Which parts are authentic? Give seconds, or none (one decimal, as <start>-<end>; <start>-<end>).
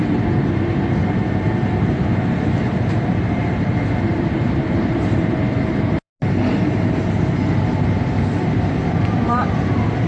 1.0-2.7; 6.1-7.8